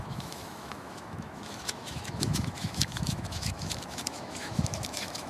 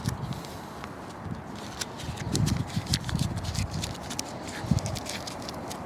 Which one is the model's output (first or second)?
first